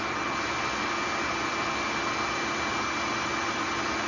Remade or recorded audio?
recorded